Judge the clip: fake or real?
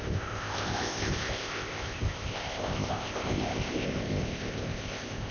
fake